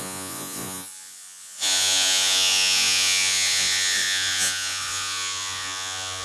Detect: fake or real fake